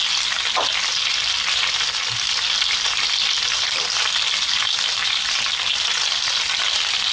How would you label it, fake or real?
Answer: real